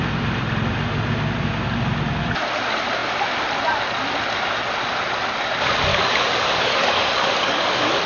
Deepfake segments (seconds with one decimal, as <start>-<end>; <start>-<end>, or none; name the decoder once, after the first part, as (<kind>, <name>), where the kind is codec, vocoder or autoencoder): 5.9-8.1 (codec, DAC)